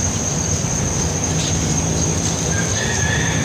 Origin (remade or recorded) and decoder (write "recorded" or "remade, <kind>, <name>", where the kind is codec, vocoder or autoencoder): recorded